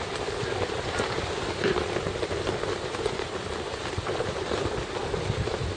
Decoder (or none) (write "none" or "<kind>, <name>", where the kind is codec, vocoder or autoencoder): none